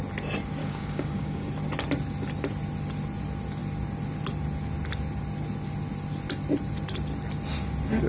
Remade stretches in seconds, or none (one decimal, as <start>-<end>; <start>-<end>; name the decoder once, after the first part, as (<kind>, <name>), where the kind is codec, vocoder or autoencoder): 0.6-1.5 (codec, DAC)